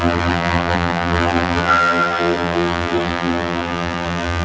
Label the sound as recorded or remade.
remade